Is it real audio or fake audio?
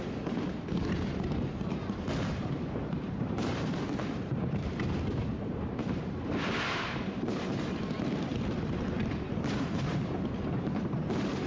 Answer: fake